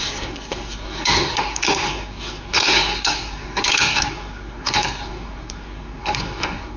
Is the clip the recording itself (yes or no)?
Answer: no